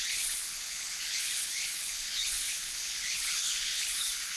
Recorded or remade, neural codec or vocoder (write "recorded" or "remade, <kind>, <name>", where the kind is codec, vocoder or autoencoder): remade, codec, HILCodec